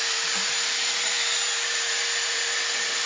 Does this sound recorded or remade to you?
remade